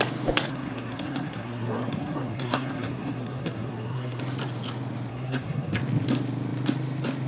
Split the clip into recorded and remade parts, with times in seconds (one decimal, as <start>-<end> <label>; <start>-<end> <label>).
0.0-0.5 recorded; 0.5-4.2 remade; 4.2-5.1 recorded; 5.1-5.8 remade; 5.8-7.3 recorded